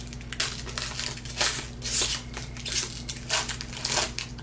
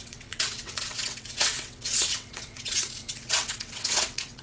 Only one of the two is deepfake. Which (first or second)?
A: second